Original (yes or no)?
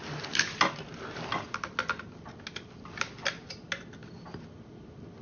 yes